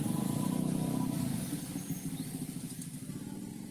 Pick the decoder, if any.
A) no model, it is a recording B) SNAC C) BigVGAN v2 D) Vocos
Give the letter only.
A